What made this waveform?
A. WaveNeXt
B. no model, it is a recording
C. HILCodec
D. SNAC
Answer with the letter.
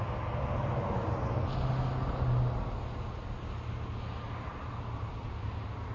B